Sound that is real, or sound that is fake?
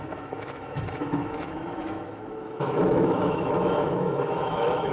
fake